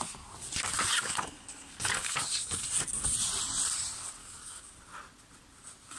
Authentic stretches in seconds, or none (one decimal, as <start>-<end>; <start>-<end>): 0.0-1.0; 2.6-4.2; 4.7-6.0